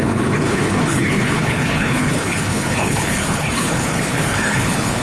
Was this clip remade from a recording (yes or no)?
yes